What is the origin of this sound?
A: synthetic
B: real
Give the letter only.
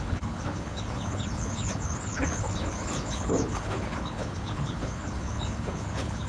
A